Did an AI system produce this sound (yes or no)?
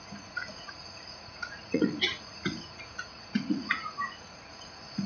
yes